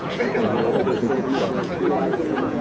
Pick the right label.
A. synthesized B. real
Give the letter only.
A